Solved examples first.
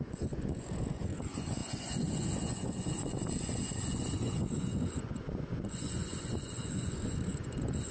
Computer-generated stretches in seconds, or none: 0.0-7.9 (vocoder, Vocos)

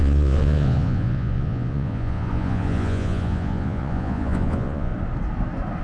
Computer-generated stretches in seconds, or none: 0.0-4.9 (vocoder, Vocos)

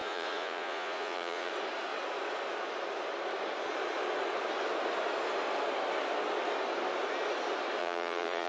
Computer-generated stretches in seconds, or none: 0.0-1.5 (vocoder, Vocos); 7.8-8.5

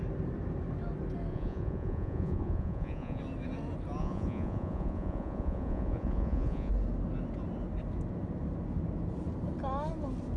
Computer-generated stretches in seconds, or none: 1.3-3.2 (vocoder, Vocos); 4.0-6.7

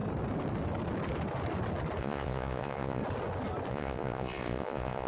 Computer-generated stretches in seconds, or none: 2.0-3.0 (vocoder, Vocos); 3.7-5.1